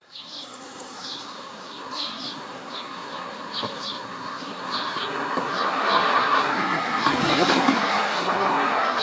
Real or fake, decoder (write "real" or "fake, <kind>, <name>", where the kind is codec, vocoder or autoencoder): fake, codec, SNAC